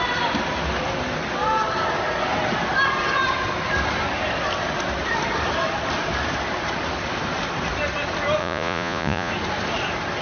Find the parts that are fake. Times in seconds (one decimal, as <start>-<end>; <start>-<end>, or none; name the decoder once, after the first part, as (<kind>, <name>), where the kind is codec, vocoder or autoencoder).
8.4-9.3 (vocoder, Vocos)